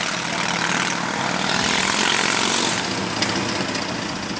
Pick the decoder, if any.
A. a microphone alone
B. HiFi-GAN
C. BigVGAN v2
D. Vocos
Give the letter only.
A